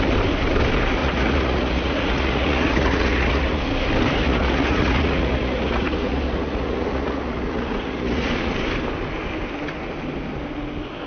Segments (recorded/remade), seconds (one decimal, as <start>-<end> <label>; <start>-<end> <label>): 0.0-1.0 recorded; 1.0-3.6 remade; 3.6-4.2 recorded; 4.2-8.3 remade; 8.3-11.1 recorded